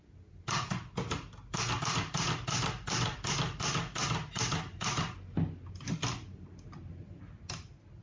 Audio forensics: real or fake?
real